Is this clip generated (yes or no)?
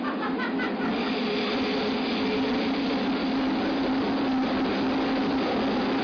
no